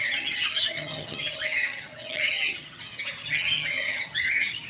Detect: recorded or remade remade